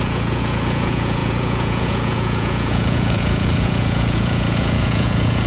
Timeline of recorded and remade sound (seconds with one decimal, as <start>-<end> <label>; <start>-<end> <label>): 0.0-5.5 remade